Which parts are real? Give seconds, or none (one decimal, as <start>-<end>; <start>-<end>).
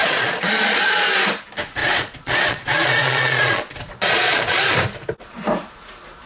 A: 1.0-1.8; 4.6-6.3